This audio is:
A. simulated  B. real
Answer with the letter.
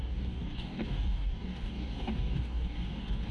A